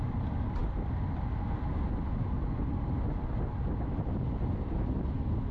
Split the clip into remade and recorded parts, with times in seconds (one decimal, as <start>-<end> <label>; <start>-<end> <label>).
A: 0.0-5.5 recorded